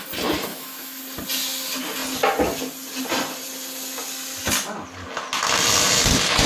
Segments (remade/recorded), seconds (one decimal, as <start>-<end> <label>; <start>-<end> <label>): 0.0-0.5 recorded; 0.5-1.0 remade; 1.0-6.5 recorded